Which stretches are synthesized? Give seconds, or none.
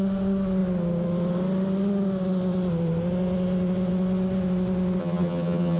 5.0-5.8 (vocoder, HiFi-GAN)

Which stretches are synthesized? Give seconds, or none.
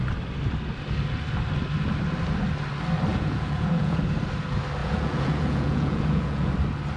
3.1-4.0 (vocoder, Vocos); 4.8-6.5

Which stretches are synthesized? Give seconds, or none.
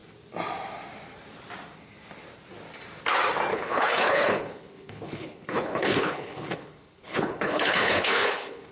3.5-8.7 (codec, HILCodec)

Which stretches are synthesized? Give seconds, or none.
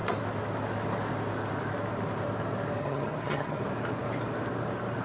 2.8-3.6 (vocoder, HiFi-GAN)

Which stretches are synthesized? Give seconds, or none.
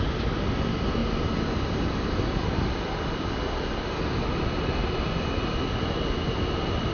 none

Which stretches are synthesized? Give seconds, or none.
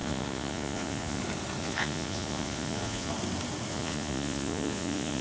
0.0-1.2 (vocoder, Vocos); 1.6-3.1; 3.7-5.2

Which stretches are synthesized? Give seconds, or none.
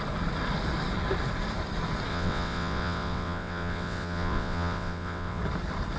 2.1-5.4 (vocoder, WaveNeXt)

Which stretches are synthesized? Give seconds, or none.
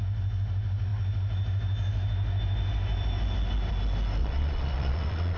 4.2-5.4 (vocoder, Vocos)